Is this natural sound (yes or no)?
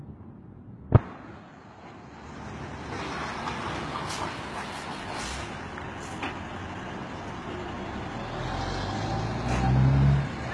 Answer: yes